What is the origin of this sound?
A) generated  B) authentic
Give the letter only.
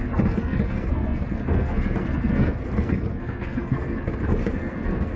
A